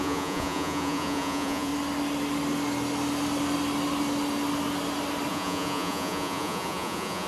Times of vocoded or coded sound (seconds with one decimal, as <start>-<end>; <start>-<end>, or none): 0.0-1.7; 5.3-7.3